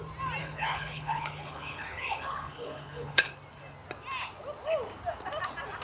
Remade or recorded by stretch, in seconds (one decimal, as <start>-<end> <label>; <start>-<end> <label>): 0.0-0.4 recorded; 0.4-3.3 remade; 3.3-5.8 recorded